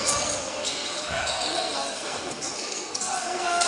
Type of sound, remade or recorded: remade